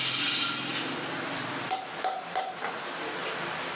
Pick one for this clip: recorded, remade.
recorded